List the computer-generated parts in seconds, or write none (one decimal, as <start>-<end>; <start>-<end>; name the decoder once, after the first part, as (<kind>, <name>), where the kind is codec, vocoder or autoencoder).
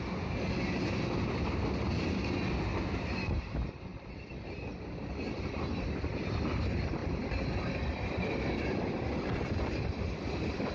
none